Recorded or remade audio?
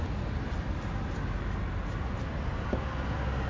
recorded